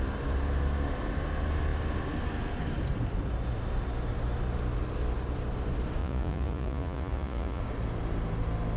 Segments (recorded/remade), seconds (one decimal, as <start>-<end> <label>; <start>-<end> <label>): 0.0-6.0 recorded; 6.0-7.6 remade; 7.6-8.8 recorded